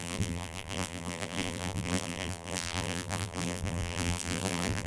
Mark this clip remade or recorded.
remade